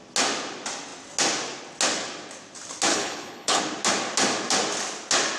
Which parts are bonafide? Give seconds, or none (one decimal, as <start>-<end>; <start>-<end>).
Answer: 0.0-2.9; 3.6-5.4